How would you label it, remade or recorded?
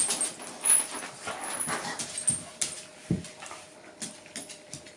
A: recorded